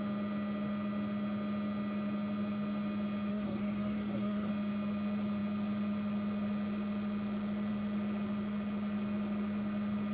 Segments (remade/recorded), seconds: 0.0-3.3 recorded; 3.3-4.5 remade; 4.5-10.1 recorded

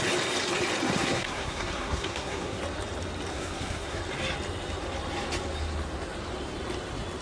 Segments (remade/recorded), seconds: 0.0-1.0 recorded; 1.0-2.6 remade; 2.6-3.3 recorded; 3.3-4.0 remade; 4.0-7.2 recorded

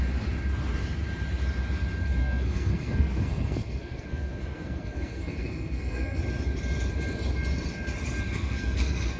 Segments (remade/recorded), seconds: 0.0-2.2 recorded; 2.2-6.2 remade; 6.2-8.3 recorded; 8.3-9.2 remade